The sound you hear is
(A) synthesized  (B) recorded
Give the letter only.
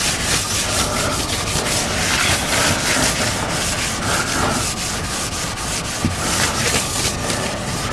B